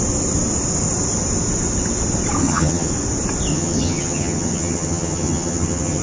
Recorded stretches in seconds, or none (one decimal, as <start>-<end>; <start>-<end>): 0.0-2.4; 2.9-3.5

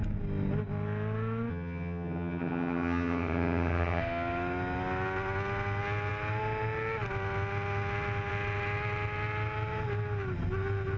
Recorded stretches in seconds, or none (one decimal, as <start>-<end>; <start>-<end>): 0.0-1.5; 4.0-11.0

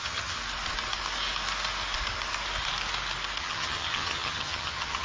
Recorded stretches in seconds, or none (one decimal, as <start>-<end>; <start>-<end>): 0.4-3.4

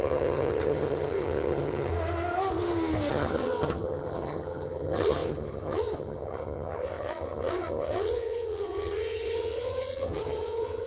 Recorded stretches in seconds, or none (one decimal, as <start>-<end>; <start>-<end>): 1.9-3.1